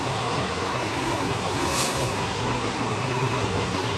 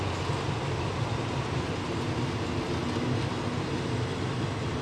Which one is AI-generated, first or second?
first